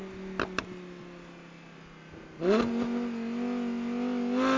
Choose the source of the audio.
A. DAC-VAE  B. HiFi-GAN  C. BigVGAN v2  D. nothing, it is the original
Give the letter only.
D